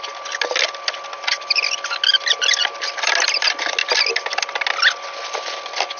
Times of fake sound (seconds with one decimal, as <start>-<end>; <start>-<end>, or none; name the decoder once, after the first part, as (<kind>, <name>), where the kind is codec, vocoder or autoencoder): none